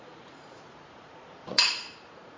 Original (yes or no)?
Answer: no